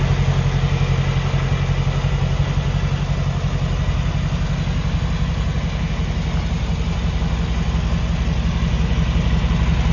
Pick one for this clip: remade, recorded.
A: recorded